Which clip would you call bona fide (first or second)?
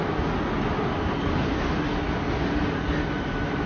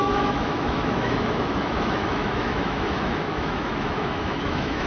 first